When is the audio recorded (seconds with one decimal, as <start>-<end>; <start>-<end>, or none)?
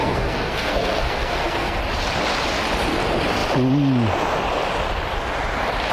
1.8-5.9